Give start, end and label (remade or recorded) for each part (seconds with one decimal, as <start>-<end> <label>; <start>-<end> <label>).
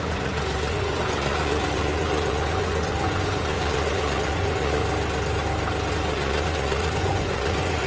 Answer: 0.0-4.8 remade; 4.8-5.9 recorded; 5.9-7.9 remade